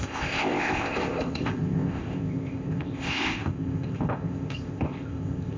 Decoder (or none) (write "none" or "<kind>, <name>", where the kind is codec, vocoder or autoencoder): codec, ZipCodec